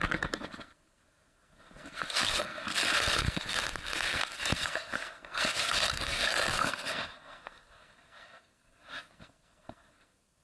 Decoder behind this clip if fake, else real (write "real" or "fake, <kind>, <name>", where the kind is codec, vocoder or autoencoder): fake, codec, SNAC